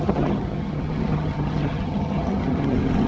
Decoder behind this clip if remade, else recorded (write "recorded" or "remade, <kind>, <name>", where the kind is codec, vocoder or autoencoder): remade, vocoder, HiFi-GAN